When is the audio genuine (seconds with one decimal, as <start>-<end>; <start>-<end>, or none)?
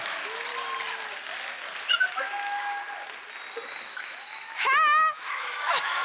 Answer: 0.5-1.9; 2.8-3.8